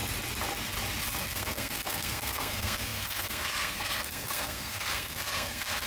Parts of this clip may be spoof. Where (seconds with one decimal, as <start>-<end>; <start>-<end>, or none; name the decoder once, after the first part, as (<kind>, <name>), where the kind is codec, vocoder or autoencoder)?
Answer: 1.2-5.9 (codec, SNAC)